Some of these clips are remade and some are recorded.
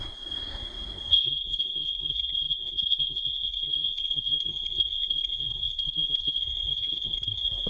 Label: remade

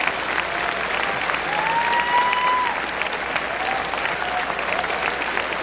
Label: recorded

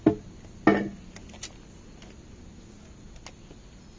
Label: recorded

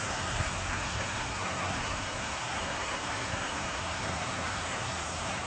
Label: remade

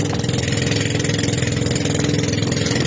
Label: recorded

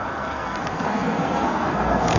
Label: remade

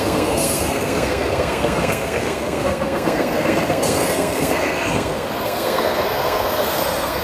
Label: remade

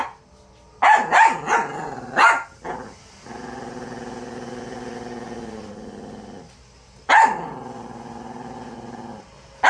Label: recorded